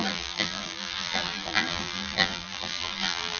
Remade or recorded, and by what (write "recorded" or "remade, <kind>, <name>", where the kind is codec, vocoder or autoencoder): remade, vocoder, BigVGAN v2